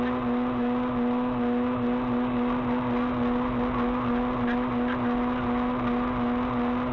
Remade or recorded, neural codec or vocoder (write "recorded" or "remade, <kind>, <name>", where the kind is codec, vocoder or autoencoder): recorded